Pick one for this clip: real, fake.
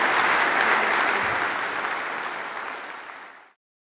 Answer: real